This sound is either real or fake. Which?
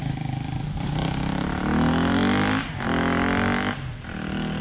real